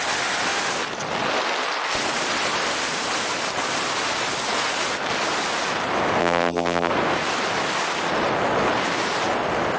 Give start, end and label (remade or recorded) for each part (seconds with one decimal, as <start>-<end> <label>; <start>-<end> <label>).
0.0-6.2 recorded; 6.2-6.9 remade; 6.9-9.8 recorded